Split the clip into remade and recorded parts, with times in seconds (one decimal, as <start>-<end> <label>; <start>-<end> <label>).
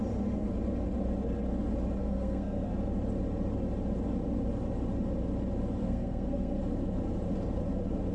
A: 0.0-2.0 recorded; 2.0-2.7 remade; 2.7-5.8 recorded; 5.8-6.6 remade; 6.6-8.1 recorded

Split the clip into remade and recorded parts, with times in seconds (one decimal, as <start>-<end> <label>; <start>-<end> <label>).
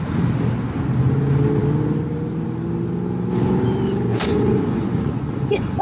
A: 0.0-4.1 recorded; 4.1-5.8 remade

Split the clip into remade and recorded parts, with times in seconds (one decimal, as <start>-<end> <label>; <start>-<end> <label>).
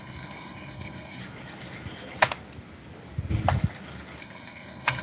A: 0.0-1.2 remade; 1.2-4.2 recorded; 4.2-5.0 remade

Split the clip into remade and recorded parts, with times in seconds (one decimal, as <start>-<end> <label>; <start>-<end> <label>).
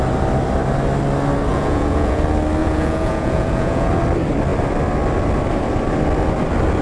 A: 0.0-1.5 recorded; 1.5-2.2 remade; 2.2-2.6 recorded; 2.6-3.9 remade; 3.9-6.8 recorded